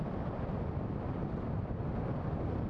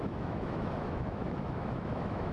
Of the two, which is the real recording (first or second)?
first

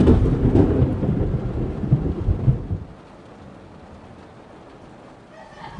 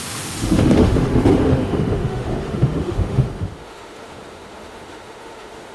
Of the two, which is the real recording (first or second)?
first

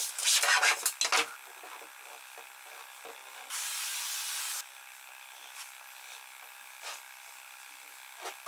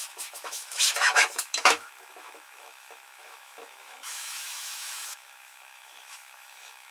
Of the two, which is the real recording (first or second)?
first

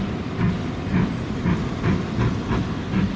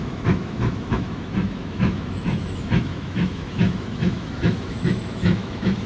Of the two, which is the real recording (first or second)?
first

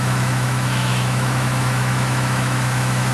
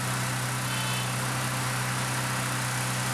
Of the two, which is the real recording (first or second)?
second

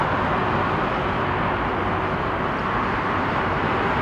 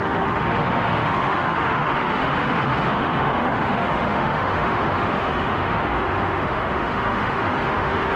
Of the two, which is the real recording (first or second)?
first